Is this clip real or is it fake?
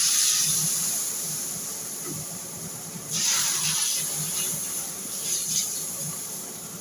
fake